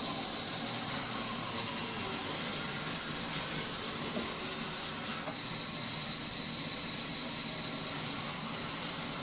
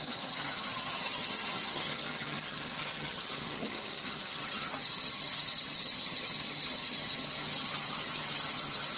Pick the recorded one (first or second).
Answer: first